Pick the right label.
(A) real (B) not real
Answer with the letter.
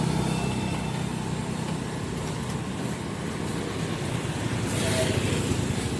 A